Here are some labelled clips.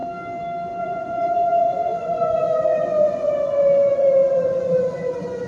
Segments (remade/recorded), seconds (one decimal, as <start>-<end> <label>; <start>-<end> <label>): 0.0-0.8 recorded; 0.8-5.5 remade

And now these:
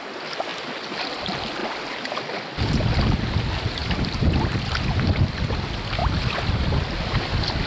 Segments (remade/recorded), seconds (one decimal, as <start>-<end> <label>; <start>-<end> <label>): 0.0-0.5 recorded; 0.5-1.2 remade; 1.2-3.8 recorded; 3.8-4.6 remade; 4.6-6.0 recorded; 6.0-7.7 remade

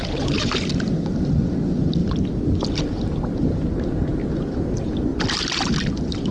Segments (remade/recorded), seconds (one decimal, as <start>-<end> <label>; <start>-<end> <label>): 0.0-2.0 recorded; 2.0-2.8 remade; 2.8-4.1 recorded; 4.1-4.6 remade; 4.6-5.1 recorded; 5.1-5.7 remade; 5.7-6.3 recorded

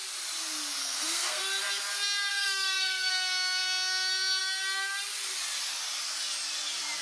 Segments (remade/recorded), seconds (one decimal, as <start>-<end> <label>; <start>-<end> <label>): 0.0-0.8 recorded; 0.8-1.4 remade; 1.4-2.3 recorded; 2.3-3.1 remade; 3.1-7.0 recorded

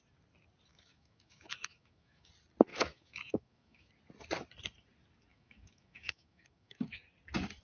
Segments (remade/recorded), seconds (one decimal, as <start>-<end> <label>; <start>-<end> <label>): 0.0-0.7 recorded; 0.7-2.3 remade; 2.3-2.7 recorded; 2.7-3.9 remade; 3.9-5.3 recorded; 5.3-7.0 remade; 7.0-7.6 recorded

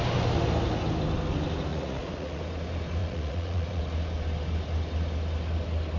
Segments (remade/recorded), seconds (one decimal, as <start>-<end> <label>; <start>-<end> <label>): 0.0-1.7 recorded; 1.7-2.4 remade; 2.4-3.0 recorded; 3.0-3.8 remade; 3.8-6.0 recorded

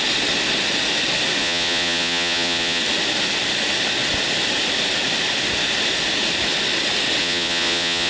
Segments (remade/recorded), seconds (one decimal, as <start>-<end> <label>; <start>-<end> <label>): 0.0-1.4 recorded; 1.4-2.8 remade; 2.8-7.2 recorded; 7.2-8.1 remade